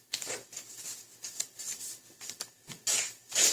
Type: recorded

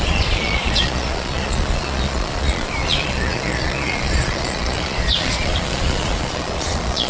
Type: remade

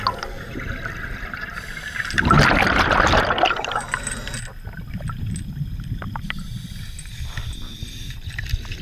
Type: recorded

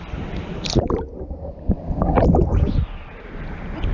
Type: recorded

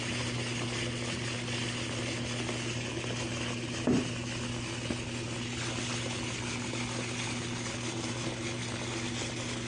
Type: recorded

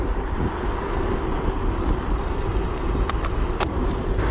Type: recorded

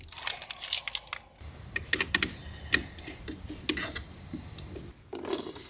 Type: recorded